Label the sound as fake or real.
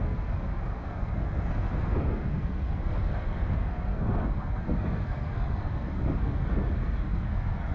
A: fake